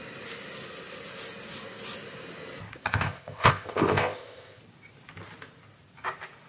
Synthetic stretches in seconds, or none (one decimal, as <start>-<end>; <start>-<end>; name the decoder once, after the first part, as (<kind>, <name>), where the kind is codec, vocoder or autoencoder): 2.8-4.6 (codec, ZipCodec)